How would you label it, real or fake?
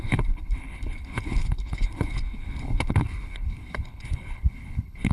fake